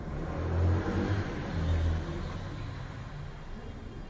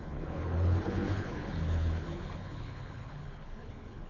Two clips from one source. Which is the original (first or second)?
first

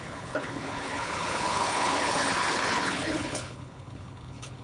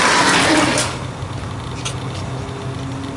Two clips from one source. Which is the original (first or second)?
second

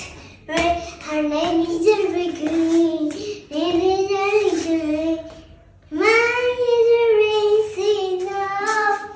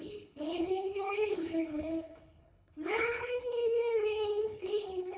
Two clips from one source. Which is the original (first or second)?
first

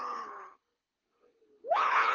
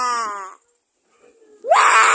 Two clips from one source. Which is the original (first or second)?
second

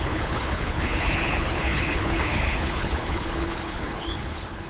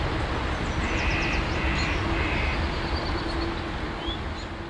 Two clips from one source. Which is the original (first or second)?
second